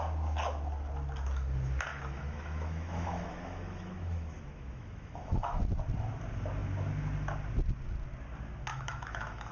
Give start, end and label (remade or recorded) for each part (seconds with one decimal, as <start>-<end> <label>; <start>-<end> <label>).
0.0-1.9 recorded; 1.9-5.6 remade; 5.6-8.7 recorded; 8.7-9.5 remade